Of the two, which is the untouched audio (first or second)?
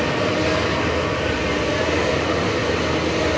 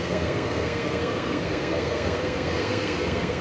first